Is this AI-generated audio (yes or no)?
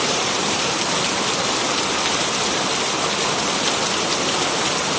yes